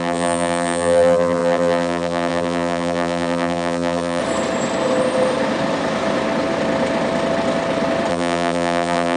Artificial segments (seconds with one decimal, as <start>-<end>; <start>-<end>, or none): 0.0-4.2; 8.1-9.2